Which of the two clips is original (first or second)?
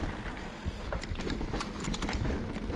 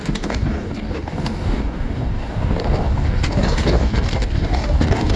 first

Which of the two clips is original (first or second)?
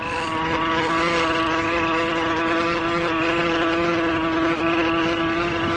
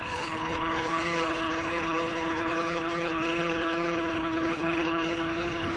first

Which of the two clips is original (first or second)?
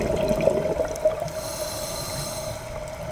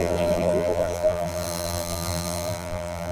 first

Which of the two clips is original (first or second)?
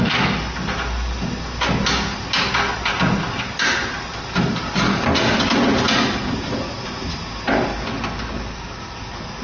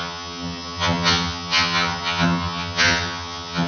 first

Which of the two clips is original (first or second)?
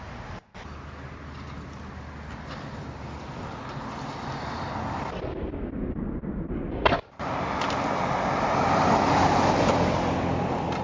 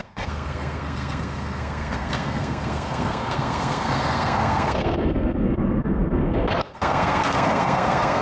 first